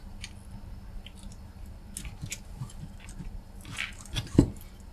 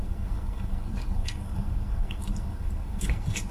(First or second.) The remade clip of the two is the second